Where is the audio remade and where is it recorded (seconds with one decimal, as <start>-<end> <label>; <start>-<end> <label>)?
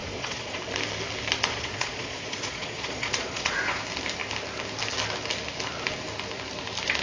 0.0-0.6 remade; 0.6-1.5 recorded; 1.5-3.8 remade; 3.8-7.0 recorded